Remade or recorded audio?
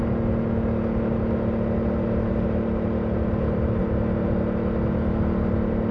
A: recorded